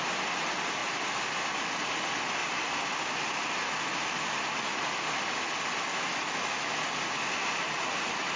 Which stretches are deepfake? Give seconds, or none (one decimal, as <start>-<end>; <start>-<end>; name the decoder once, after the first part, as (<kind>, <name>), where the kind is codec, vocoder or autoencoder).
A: 5.9-6.7 (autoencoder, DAC-VAE)